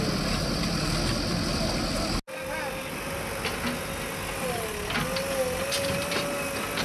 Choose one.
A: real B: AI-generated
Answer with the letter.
A